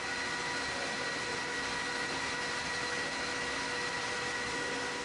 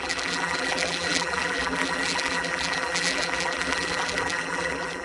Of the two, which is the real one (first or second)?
first